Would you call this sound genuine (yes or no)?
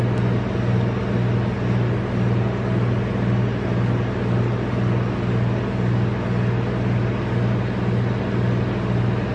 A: yes